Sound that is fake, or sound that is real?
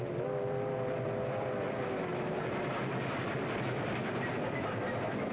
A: real